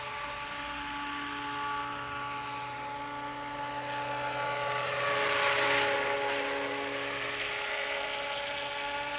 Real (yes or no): yes